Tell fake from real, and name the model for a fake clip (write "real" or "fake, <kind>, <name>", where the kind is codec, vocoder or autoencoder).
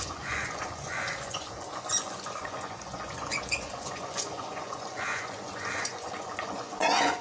fake, vocoder, Vocos